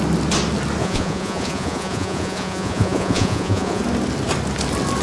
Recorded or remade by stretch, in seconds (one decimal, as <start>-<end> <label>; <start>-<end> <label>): 0.0-0.8 recorded; 0.8-3.8 remade; 3.8-5.0 recorded